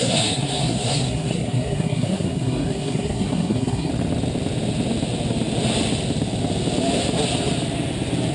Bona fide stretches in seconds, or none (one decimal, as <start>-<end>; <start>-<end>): 3.9-8.3